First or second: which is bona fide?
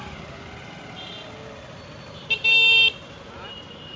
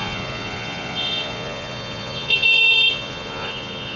first